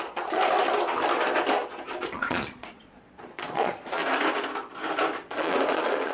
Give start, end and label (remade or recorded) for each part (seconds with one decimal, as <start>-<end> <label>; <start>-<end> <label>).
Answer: 0.0-0.4 remade; 0.4-2.0 recorded; 2.0-4.0 remade; 4.0-5.3 recorded; 5.3-6.1 remade